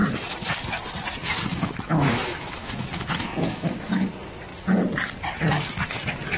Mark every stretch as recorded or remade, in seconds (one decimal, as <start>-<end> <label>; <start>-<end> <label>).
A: 0.0-1.5 recorded; 1.5-4.1 remade; 4.1-6.4 recorded